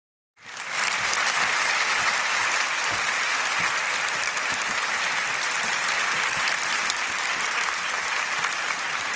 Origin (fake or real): real